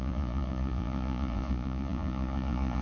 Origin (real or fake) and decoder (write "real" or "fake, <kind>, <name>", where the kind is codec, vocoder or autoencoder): fake, vocoder, Vocos